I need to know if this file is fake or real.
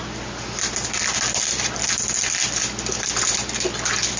real